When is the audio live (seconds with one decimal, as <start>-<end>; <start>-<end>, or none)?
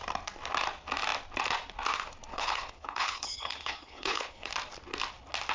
0.0-2.3; 4.5-5.5